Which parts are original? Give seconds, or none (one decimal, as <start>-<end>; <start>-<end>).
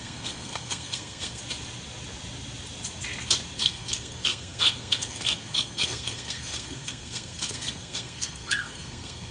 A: 1.4-3.6